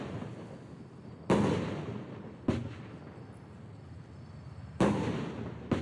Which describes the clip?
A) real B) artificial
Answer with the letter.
A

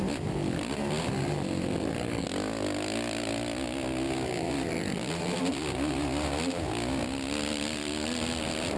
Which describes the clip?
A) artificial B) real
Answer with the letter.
B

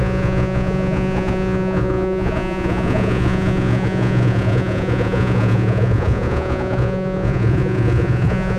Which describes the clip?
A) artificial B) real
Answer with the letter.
A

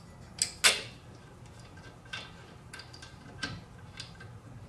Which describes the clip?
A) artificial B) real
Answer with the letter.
B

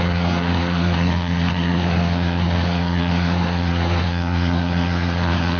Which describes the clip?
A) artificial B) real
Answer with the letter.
A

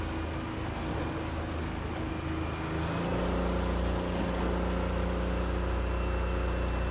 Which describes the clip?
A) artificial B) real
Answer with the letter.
B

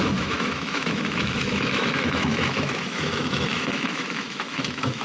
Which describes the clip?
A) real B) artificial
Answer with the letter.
B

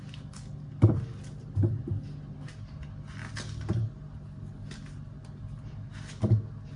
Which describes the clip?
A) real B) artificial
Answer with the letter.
A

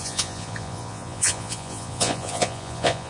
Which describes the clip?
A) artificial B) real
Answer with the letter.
A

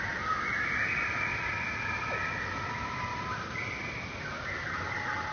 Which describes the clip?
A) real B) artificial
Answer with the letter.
A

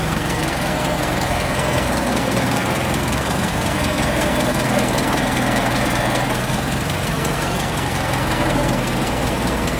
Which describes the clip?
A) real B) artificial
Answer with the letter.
B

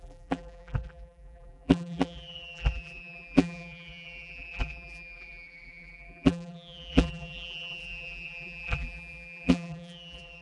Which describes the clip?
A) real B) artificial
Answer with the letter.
B